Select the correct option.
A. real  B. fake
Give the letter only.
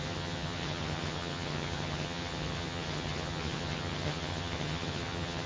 B